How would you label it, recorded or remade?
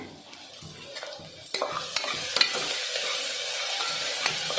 recorded